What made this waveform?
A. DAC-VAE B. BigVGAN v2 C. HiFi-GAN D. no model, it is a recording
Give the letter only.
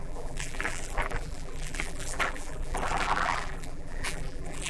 B